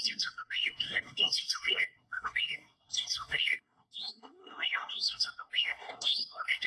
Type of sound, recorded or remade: remade